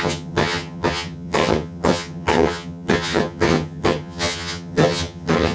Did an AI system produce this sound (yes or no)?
yes